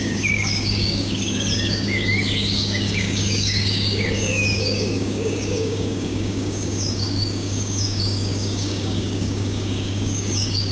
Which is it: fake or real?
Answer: fake